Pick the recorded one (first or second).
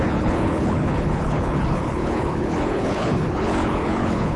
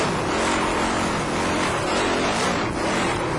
second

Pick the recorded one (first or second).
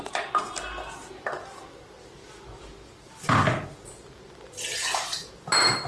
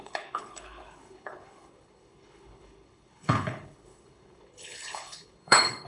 first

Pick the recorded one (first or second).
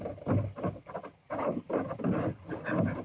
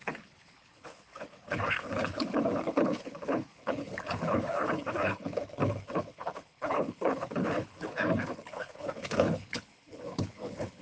first